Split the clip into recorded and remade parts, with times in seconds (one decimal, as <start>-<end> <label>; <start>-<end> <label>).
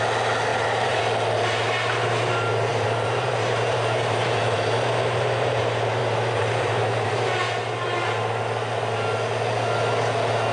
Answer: 0.0-0.5 recorded; 0.5-1.0 remade; 1.0-2.7 recorded; 2.7-5.6 remade; 5.6-6.0 recorded; 6.0-7.3 remade; 7.3-10.5 recorded